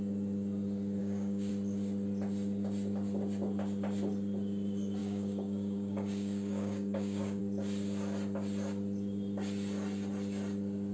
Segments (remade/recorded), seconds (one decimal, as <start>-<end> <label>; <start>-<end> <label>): 0.0-1.0 recorded; 1.0-1.5 remade; 1.5-5.0 recorded; 5.0-7.4 remade; 7.4-10.9 recorded

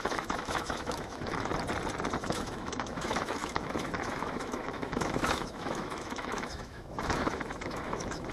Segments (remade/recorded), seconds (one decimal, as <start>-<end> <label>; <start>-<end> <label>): 0.0-1.5 remade; 1.5-2.2 recorded; 2.2-8.3 remade

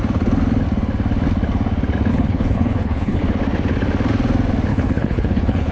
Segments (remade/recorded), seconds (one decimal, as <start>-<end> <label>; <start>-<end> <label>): 0.0-2.1 recorded; 2.1-3.2 remade; 3.2-4.7 recorded; 4.7-5.7 remade